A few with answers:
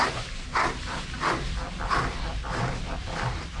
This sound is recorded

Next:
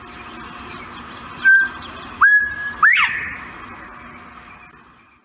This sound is recorded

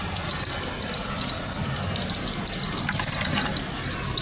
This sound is recorded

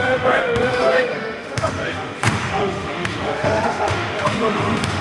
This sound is remade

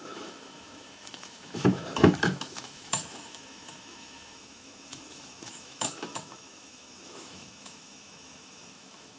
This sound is remade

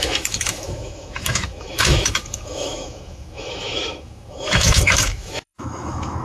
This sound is remade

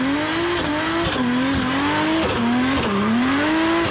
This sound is recorded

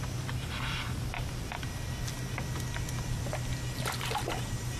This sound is recorded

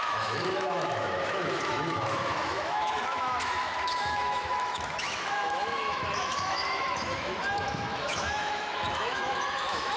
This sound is remade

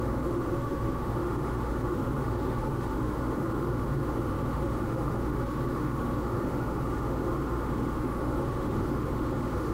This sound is remade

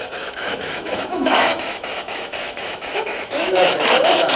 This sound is remade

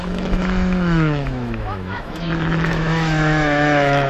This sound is remade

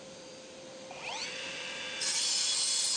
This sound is recorded